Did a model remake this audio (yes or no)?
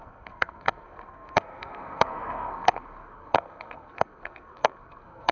yes